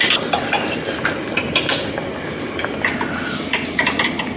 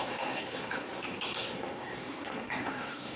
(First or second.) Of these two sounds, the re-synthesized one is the second